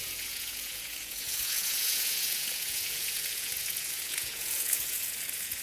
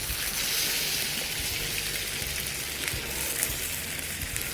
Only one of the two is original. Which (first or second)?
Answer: second